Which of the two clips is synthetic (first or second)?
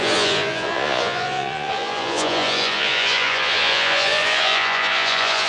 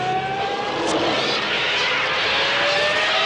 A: first